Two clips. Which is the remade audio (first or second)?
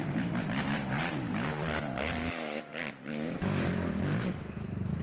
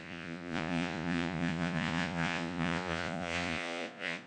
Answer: second